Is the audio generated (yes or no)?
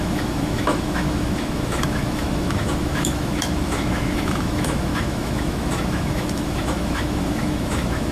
yes